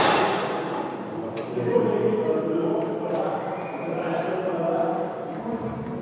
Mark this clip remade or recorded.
recorded